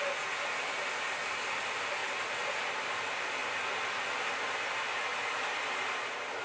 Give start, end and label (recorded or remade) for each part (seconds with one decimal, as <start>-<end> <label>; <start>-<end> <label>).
0.0-6.4 recorded